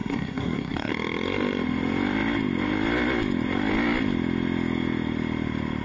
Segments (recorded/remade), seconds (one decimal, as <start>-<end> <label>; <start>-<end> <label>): 0.0-0.9 remade; 0.9-5.8 recorded